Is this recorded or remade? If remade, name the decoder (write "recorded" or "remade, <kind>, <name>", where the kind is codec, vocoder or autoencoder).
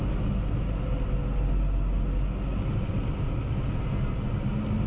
recorded